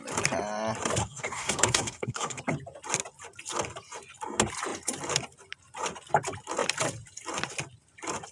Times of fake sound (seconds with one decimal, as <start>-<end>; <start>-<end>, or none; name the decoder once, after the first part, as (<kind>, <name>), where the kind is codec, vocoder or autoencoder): 1.0-2.4 (codec, SNAC)